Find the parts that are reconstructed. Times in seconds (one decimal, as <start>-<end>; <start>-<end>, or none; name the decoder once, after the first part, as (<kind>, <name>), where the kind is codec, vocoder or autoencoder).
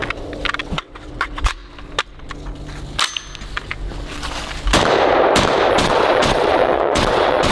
0.6-1.6 (vocoder, WaveNeXt); 5.7-7.5